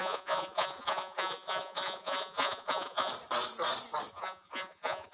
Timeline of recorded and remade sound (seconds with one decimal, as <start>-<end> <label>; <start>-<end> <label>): 0.0-3.1 remade; 3.1-4.1 recorded; 4.1-5.1 remade